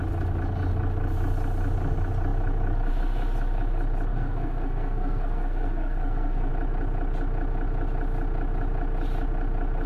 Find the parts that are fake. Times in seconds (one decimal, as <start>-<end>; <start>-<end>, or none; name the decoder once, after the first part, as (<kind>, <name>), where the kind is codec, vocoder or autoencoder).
4.1-6.5 (codec, SNAC)